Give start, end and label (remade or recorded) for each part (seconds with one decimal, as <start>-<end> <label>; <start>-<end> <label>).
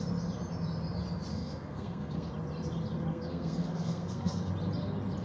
0.0-1.3 recorded; 1.3-2.3 remade; 2.3-3.1 recorded; 3.1-4.5 remade; 4.5-5.2 recorded